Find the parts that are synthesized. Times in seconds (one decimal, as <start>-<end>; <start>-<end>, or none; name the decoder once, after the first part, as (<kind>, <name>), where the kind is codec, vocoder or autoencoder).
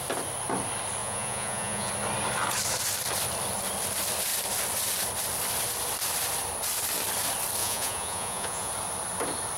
1.0-1.9 (vocoder, Vocos); 7.6-8.7